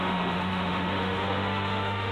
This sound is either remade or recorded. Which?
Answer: remade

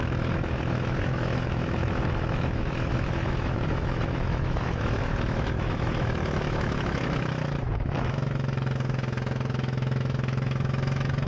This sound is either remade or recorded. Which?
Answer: remade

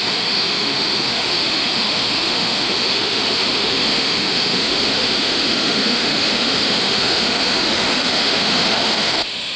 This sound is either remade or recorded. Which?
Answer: remade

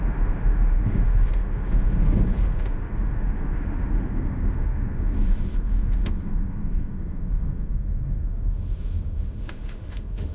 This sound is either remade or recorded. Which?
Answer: remade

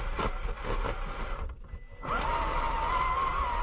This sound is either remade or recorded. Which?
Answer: recorded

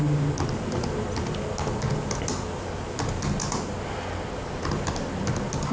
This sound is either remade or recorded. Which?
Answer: recorded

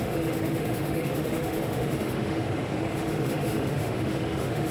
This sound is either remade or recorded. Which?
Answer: remade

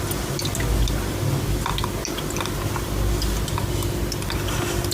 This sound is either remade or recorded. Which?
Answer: recorded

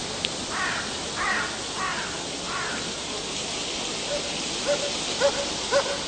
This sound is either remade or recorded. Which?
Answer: recorded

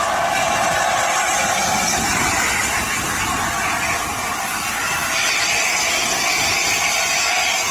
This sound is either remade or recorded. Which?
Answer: recorded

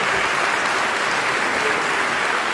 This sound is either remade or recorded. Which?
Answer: recorded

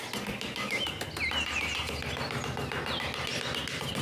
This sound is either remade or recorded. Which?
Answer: recorded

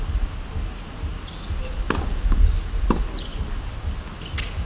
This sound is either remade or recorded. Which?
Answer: recorded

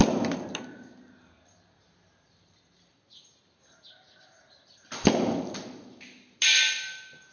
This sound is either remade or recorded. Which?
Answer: recorded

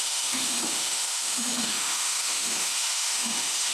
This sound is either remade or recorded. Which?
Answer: remade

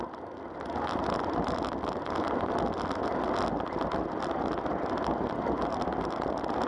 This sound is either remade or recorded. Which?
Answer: recorded